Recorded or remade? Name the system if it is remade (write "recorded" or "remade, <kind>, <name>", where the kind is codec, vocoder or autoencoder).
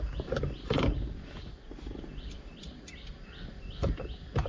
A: recorded